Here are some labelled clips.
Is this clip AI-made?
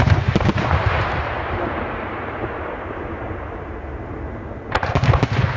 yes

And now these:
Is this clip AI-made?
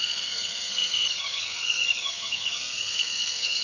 yes